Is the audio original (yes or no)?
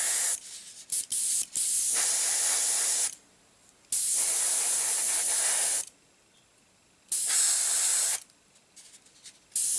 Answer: yes